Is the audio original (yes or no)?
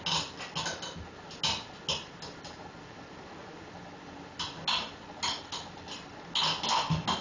yes